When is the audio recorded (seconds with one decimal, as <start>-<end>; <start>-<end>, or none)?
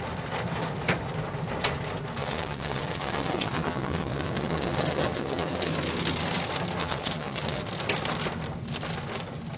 0.0-2.2; 5.7-6.8; 7.6-9.6